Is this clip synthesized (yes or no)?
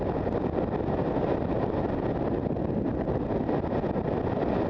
no